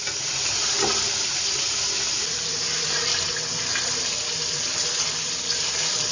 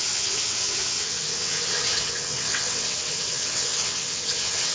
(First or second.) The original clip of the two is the first